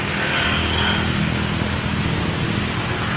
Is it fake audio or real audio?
real